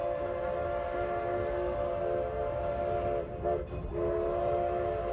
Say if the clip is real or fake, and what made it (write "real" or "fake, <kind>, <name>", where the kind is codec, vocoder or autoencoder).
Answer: real